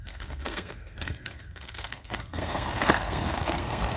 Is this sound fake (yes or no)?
yes